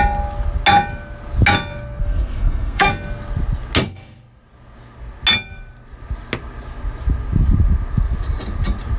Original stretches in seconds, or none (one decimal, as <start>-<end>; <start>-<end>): 0.0-2.0; 2.9-9.0